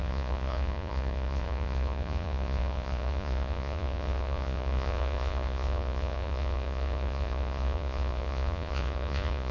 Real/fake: fake